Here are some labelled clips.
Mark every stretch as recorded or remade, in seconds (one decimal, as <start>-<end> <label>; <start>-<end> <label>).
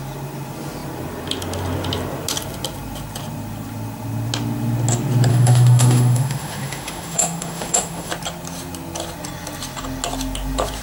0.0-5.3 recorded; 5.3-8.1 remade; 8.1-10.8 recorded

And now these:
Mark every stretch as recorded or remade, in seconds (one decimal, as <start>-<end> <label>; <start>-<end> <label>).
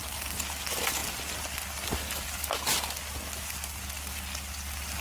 0.0-5.0 recorded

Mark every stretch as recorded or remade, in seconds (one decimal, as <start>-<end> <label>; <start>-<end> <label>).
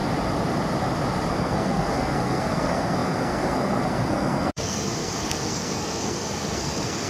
0.0-1.3 recorded; 1.3-7.1 remade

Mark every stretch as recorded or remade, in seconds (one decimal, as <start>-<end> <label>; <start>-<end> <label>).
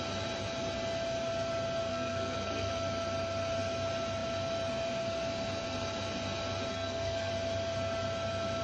0.0-1.9 recorded; 1.9-2.7 remade; 2.7-6.7 recorded; 6.7-7.3 remade; 7.3-8.6 recorded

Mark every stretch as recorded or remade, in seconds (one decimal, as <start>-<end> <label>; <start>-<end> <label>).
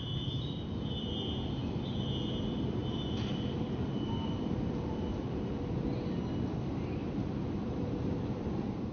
0.0-2.8 recorded; 2.8-5.7 remade; 5.7-7.0 recorded; 7.0-8.5 remade; 8.5-8.9 recorded